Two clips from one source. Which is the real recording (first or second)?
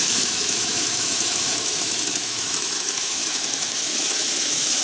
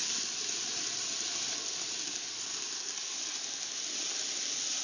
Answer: second